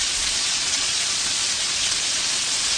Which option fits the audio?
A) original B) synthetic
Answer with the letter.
B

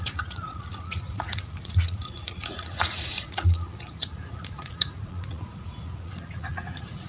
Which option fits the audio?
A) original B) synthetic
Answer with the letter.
B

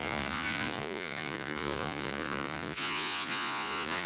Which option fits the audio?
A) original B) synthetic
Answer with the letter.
B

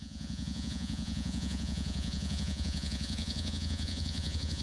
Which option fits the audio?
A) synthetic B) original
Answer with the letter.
A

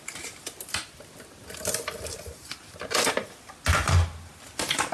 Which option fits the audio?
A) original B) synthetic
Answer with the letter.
A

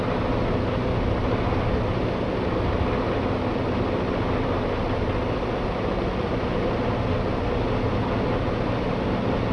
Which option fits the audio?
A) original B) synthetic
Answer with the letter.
A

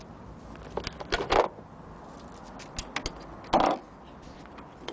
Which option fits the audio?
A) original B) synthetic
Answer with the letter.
A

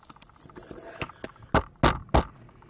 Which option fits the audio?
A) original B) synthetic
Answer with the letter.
A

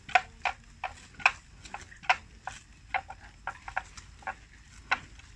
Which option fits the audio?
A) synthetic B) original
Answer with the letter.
B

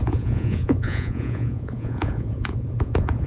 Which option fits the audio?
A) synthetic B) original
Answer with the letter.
A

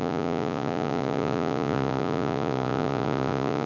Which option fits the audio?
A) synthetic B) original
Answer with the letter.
A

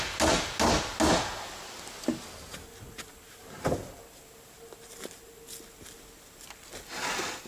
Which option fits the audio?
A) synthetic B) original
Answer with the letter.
B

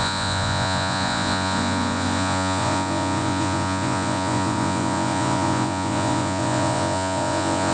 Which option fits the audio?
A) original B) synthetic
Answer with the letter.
B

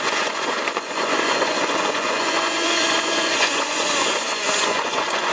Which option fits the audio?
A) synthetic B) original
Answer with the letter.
A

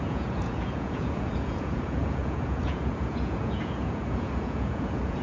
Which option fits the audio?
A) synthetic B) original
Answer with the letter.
A